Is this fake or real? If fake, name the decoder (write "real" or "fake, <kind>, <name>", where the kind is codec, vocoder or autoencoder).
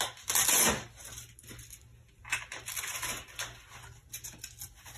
real